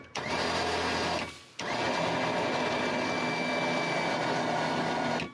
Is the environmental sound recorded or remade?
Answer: recorded